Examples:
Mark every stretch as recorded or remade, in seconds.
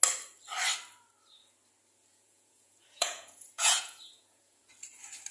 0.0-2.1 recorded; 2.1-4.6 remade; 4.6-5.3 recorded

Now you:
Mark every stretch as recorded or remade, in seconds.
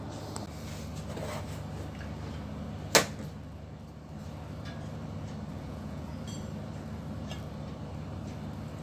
0.0-5.5 recorded; 5.5-6.1 remade; 6.1-8.8 recorded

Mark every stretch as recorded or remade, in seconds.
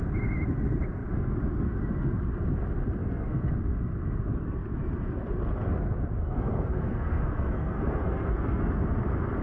0.0-3.0 recorded; 3.0-3.5 remade; 3.5-6.2 recorded; 6.2-8.7 remade; 8.7-9.4 recorded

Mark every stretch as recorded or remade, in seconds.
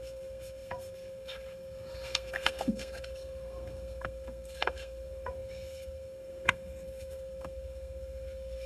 0.0-8.7 remade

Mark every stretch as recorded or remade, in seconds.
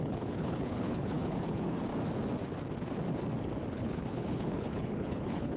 0.0-1.9 remade; 1.9-3.7 recorded; 3.7-5.6 remade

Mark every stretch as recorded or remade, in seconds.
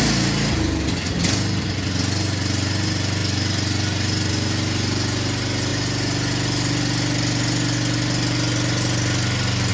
0.0-9.7 recorded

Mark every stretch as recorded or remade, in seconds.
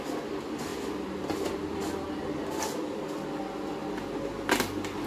0.0-5.1 recorded